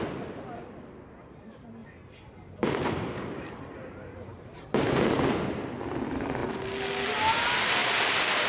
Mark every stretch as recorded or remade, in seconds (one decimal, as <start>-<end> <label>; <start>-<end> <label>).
0.0-1.8 recorded; 1.8-4.6 remade; 4.6-7.8 recorded; 7.8-8.5 remade